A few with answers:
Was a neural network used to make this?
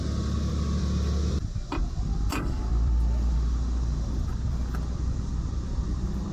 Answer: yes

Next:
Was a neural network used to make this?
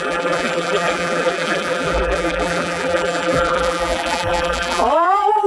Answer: yes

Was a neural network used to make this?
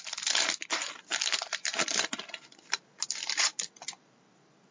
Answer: no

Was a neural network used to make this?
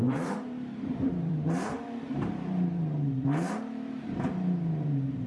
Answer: yes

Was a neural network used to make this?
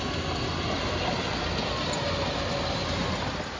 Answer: no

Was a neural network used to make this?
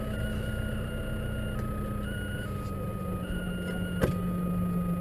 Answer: no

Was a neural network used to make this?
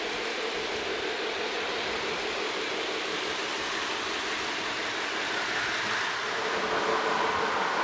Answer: yes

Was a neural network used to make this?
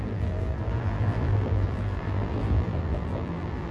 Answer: yes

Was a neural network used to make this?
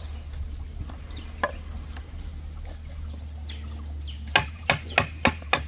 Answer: no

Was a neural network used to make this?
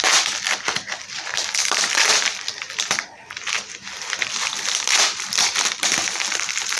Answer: yes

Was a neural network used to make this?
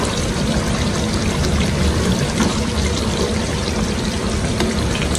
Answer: yes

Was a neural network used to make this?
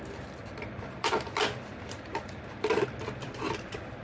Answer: yes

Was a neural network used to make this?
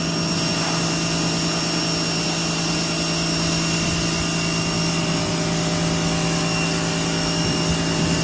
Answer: no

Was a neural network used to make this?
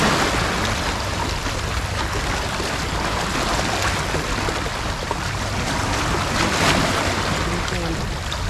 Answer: no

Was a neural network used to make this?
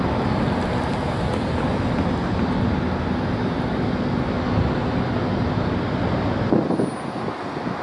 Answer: no